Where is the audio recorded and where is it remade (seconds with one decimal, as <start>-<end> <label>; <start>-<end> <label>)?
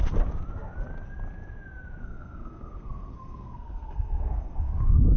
0.0-2.0 recorded; 2.0-5.2 remade